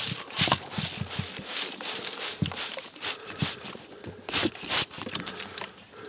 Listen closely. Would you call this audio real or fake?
real